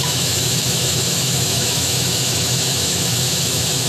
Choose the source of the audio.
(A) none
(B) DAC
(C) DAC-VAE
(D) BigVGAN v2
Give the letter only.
C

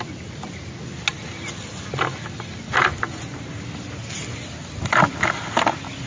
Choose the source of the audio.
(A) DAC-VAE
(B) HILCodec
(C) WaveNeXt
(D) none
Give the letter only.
D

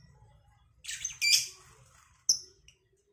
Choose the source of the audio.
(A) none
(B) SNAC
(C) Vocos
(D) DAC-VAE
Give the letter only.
A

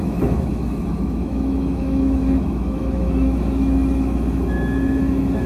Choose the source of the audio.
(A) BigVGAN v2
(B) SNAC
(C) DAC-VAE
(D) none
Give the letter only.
C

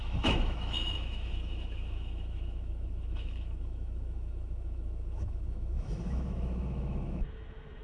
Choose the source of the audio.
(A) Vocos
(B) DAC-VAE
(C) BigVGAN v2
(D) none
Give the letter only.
B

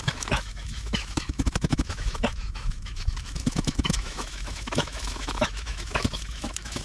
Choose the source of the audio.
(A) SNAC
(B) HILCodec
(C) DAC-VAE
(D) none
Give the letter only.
C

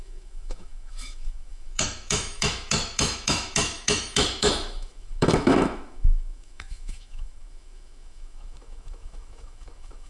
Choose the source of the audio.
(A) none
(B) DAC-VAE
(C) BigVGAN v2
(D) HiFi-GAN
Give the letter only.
B